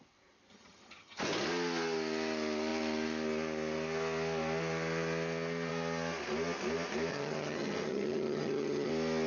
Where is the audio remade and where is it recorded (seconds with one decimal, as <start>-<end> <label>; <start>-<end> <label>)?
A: 0.0-0.5 recorded; 0.5-1.2 remade; 1.2-7.1 recorded; 7.1-8.9 remade; 8.9-9.3 recorded